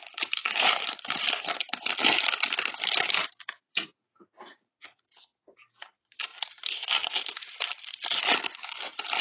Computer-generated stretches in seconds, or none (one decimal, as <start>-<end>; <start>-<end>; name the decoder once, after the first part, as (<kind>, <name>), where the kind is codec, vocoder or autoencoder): 0.4-1.2 (vocoder, Vocos); 3.6-5.0